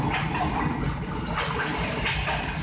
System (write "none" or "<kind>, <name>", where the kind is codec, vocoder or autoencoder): none